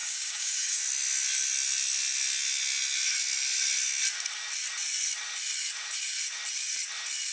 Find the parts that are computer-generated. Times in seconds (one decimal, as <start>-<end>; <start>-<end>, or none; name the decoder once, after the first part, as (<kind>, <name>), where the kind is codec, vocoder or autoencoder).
0.0-0.8 (codec, DAC)

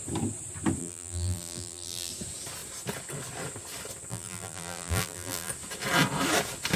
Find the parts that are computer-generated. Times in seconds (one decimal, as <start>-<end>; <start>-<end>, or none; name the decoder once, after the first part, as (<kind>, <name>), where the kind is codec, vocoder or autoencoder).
0.8-2.1 (vocoder, BigVGAN v2); 4.1-5.5

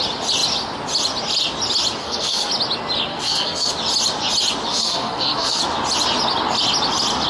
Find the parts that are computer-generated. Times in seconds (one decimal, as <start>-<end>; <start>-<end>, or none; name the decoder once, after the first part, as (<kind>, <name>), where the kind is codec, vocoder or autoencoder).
2.0-2.5 (codec, SNAC); 3.1-3.7; 4.7-5.6

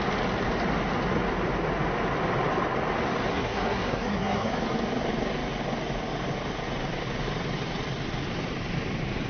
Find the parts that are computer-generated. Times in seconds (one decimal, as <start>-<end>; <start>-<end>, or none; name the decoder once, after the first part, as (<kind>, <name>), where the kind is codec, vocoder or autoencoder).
3.3-4.5 (codec, SNAC)

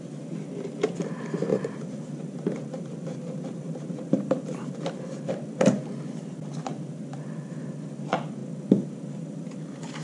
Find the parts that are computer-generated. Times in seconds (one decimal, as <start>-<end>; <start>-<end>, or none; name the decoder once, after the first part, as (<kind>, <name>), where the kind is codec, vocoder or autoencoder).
1.5-5.3 (vocoder, BigVGAN v2)